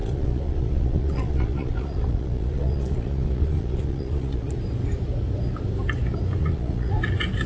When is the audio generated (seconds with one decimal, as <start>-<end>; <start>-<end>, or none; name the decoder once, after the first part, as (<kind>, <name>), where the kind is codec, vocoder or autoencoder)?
0.0-4.5 (vocoder, Vocos); 6.4-6.9